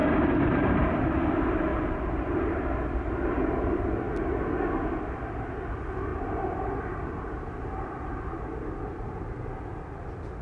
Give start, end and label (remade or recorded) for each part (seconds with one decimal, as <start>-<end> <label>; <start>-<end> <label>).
0.0-1.0 remade; 1.0-1.7 recorded; 1.7-2.8 remade; 2.8-6.1 recorded; 6.1-6.7 remade; 6.7-10.4 recorded